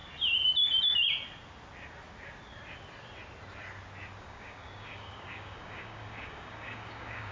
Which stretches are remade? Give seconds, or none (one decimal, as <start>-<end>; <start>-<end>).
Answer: 4.2-7.3